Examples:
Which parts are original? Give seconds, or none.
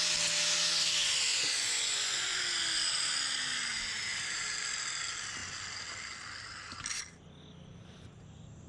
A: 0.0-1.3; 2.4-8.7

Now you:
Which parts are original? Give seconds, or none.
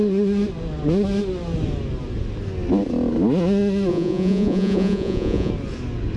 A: 0.0-3.9; 5.5-6.2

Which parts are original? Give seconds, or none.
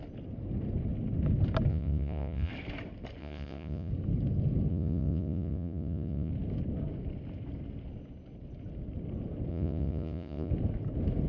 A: 0.0-1.7; 2.5-3.2; 3.9-4.7; 6.3-9.5; 10.5-11.3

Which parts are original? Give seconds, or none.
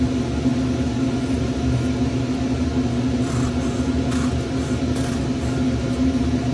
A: 0.0-6.5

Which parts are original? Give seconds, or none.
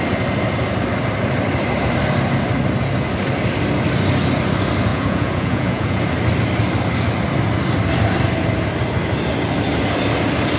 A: 0.0-4.9; 6.0-10.6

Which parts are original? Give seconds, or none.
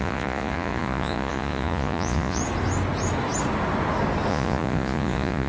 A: 2.4-4.3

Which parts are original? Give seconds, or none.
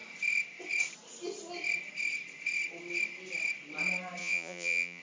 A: 0.0-4.2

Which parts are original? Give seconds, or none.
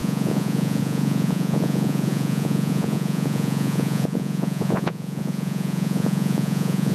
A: none